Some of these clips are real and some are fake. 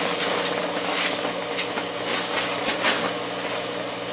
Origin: real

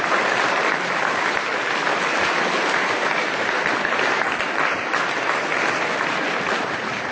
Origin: real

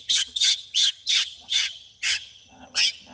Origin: fake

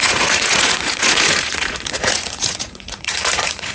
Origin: fake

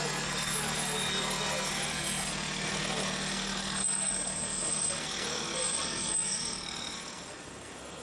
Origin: fake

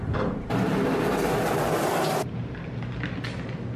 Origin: real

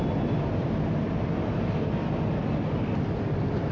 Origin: real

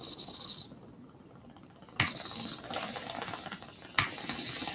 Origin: real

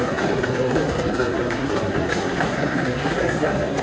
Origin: fake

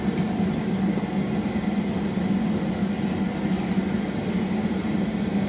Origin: real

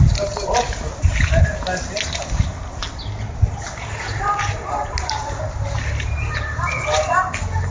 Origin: real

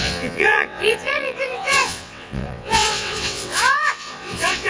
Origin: fake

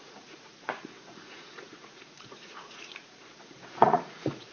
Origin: fake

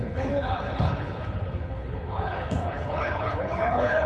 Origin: fake